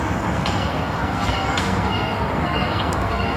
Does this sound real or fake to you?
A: fake